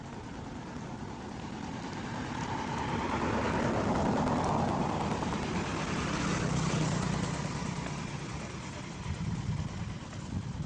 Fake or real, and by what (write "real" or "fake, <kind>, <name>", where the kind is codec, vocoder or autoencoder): real